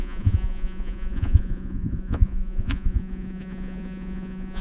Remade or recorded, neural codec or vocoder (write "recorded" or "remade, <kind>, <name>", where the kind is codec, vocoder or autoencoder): remade, vocoder, Vocos